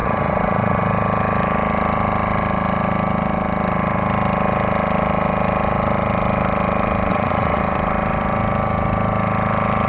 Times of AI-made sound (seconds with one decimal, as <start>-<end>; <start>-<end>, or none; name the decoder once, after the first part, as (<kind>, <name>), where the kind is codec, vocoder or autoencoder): 0.0-0.8 (vocoder, Vocos); 7.1-7.6